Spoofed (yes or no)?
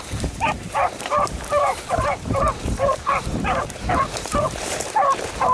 yes